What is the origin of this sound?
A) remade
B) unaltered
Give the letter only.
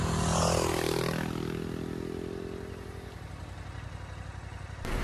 B